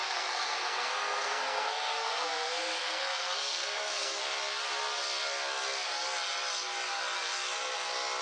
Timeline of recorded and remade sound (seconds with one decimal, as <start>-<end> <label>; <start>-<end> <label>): 0.0-4.2 remade; 4.2-8.2 recorded